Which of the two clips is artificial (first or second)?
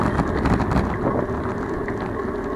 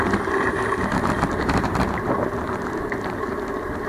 second